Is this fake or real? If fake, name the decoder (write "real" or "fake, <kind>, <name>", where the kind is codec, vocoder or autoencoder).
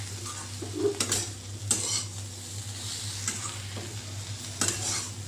real